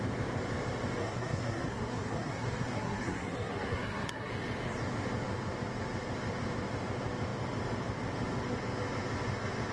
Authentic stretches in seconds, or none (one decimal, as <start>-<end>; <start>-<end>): 0.0-1.0; 4.3-9.7